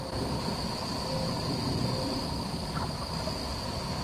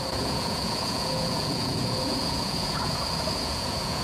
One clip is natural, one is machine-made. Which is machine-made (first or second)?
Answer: second